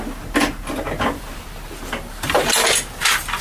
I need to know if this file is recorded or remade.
recorded